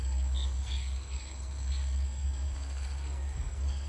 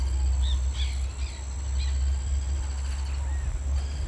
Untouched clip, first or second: second